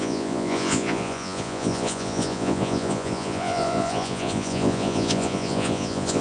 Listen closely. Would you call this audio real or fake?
fake